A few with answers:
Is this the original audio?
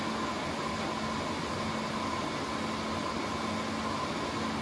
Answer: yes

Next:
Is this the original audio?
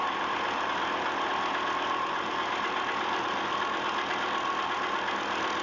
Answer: yes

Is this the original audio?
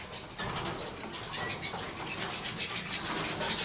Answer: yes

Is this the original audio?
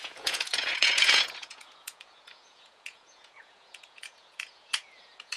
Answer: no